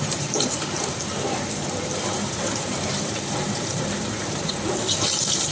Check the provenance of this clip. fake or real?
fake